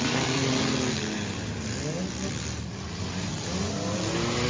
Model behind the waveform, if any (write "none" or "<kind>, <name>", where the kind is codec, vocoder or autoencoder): none